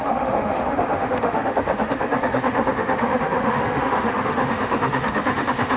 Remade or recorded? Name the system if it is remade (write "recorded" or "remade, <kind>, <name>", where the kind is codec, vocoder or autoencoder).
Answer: remade, autoencoder, DAC-VAE